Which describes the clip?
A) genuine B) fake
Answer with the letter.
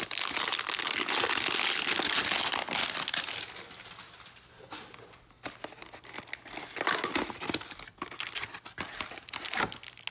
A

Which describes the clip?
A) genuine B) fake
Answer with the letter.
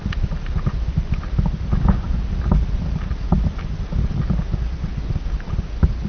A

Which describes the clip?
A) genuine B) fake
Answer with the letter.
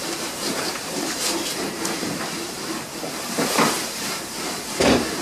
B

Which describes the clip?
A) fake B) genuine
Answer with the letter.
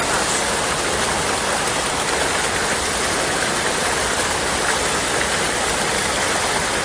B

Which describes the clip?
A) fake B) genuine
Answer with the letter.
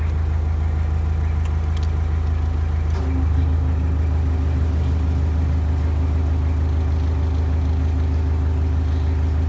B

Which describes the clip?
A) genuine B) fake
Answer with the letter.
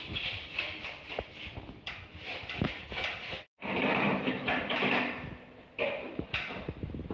A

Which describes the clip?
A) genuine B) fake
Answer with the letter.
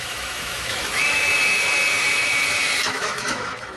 B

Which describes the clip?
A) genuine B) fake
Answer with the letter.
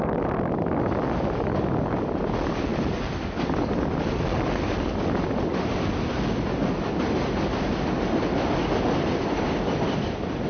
A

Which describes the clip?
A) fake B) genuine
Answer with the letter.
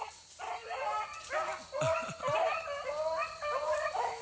B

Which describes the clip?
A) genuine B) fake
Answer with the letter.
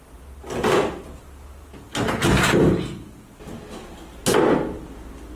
A